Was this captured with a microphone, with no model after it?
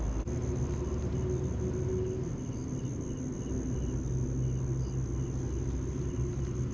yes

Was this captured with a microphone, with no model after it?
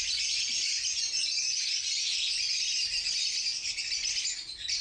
yes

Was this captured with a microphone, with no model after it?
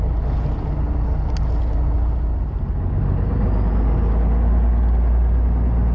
yes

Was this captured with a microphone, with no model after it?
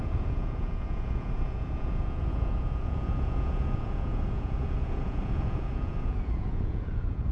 no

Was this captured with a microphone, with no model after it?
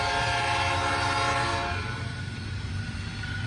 yes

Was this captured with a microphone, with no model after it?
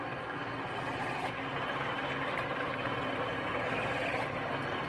yes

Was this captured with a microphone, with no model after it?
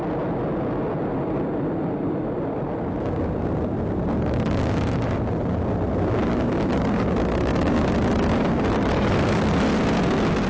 yes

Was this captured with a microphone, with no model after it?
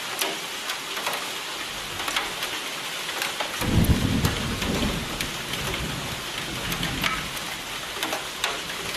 yes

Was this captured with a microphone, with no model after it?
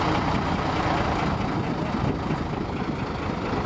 yes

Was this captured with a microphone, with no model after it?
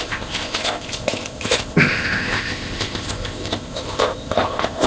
no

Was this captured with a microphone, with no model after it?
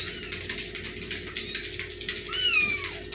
yes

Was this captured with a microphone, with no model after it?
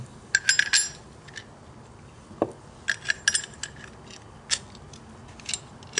yes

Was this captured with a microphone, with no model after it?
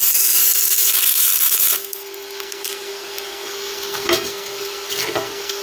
no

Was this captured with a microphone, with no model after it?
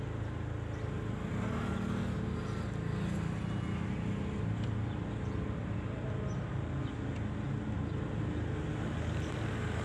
yes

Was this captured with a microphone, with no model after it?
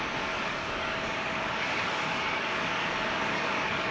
no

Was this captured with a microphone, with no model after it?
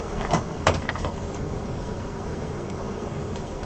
no